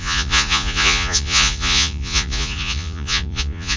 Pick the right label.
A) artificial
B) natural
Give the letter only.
A